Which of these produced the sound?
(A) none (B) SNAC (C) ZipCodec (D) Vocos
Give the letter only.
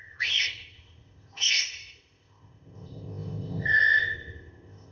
C